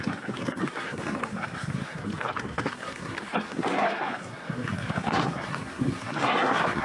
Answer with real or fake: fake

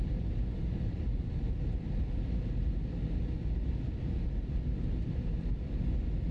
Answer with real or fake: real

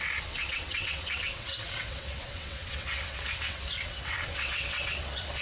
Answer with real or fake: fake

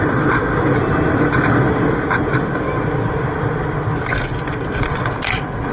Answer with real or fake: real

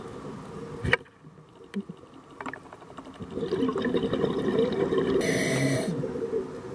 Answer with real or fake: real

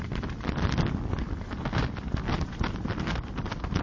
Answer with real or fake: real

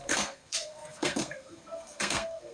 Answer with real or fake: fake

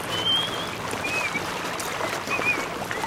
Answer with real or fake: real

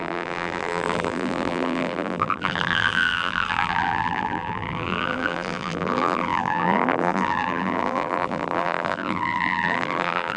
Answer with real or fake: fake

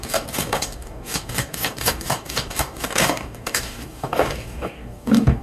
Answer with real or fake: fake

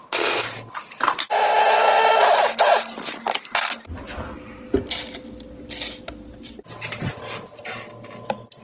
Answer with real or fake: real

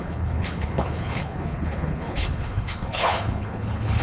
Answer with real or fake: fake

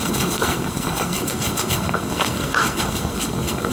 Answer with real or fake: fake